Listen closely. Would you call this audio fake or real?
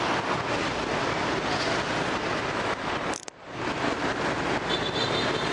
real